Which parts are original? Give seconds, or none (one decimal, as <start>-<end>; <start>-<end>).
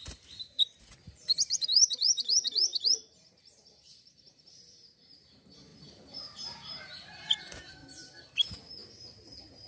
none